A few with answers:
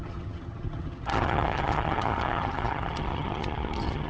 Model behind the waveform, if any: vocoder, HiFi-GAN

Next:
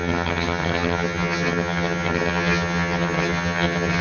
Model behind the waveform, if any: vocoder, HiFi-GAN